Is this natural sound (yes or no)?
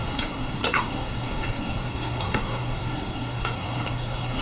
no